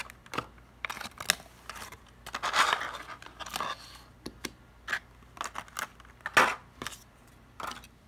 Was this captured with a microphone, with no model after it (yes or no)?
yes